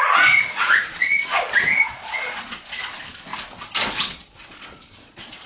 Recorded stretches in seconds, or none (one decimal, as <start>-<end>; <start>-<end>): 1.2-1.8; 3.3-3.9

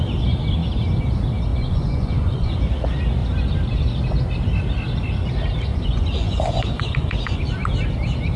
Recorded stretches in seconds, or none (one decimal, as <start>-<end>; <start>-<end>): 0.0-1.5; 2.6-5.7; 7.4-8.4

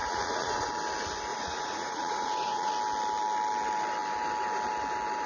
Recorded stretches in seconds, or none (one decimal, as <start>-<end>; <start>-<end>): 0.7-1.3; 2.7-5.3

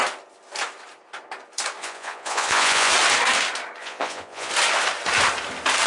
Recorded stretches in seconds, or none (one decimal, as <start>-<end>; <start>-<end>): 0.0-1.8; 2.9-3.8; 4.5-5.9